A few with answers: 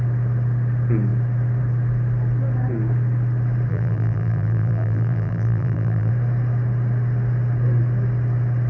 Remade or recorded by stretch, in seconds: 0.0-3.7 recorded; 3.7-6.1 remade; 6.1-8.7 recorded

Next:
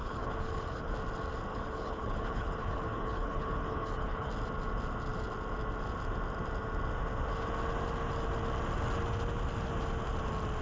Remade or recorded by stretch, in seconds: 0.0-0.9 remade; 0.9-1.5 recorded; 1.5-4.3 remade; 4.3-10.6 recorded

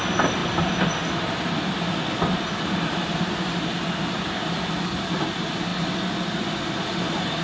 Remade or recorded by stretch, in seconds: 0.0-5.7 recorded; 5.7-7.0 remade; 7.0-7.4 recorded

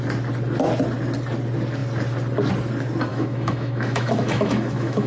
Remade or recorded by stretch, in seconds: 0.0-3.1 recorded; 3.1-5.1 remade

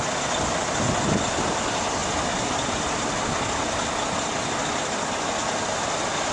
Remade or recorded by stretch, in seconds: 0.0-6.3 recorded

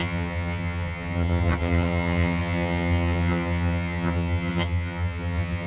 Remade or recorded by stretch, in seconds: 0.0-5.7 remade

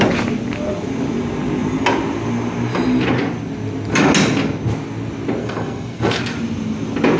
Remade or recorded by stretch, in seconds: 0.0-5.4 recorded; 5.4-6.2 remade; 6.2-7.2 recorded

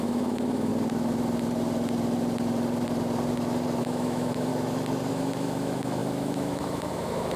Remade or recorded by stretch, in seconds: 0.0-0.7 remade; 0.7-3.8 recorded; 3.8-4.5 remade; 4.5-5.1 recorded; 5.1-7.4 remade